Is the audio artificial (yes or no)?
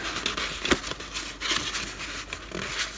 no